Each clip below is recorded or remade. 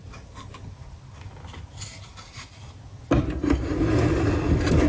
recorded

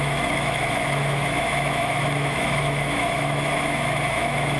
remade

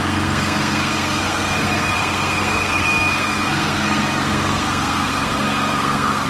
remade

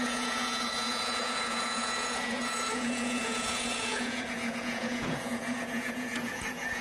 remade